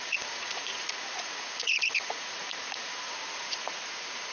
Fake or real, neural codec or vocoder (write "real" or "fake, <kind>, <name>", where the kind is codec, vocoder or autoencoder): fake, vocoder, Vocos